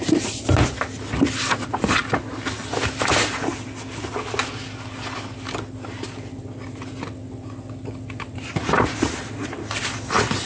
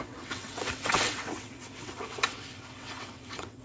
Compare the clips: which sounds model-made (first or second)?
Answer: second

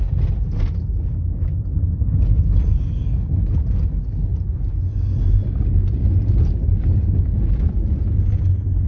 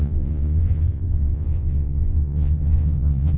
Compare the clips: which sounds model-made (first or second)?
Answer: second